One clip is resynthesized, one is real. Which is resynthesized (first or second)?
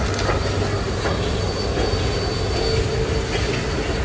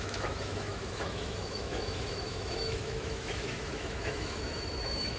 second